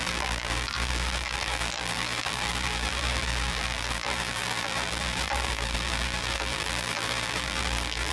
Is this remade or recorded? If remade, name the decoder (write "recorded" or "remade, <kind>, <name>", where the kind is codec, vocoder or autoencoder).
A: remade, vocoder, BigVGAN v2